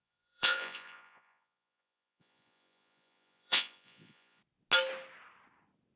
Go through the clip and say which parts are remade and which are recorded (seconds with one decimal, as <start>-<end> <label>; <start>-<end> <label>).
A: 0.0-4.4 remade; 4.4-6.0 recorded